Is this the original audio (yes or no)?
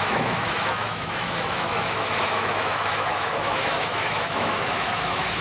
no